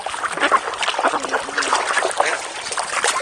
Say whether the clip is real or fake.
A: real